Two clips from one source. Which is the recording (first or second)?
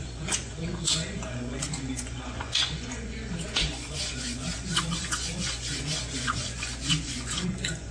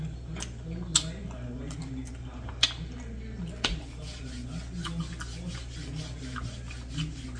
second